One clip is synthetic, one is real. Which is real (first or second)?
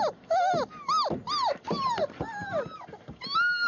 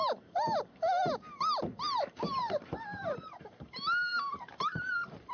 first